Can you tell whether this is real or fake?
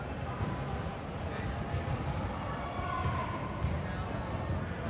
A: real